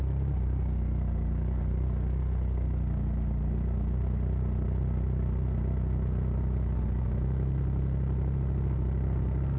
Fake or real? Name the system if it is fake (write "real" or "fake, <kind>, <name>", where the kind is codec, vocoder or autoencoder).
real